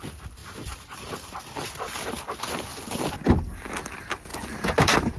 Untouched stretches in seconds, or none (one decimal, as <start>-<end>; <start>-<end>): 0.0-5.2